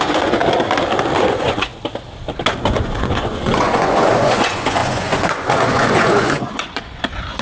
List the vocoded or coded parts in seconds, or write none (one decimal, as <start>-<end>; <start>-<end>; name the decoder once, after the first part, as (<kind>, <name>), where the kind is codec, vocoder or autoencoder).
0.0-0.4 (vocoder, Vocos); 1.2-1.7; 2.6-7.4